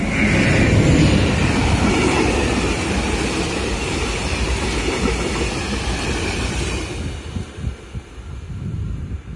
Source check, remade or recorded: recorded